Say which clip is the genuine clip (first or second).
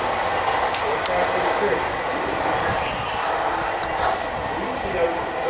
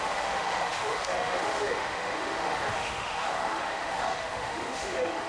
first